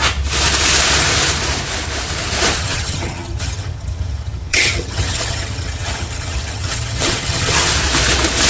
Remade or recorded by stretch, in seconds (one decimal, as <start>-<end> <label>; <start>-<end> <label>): 0.0-2.6 recorded; 2.6-7.7 remade; 7.7-8.5 recorded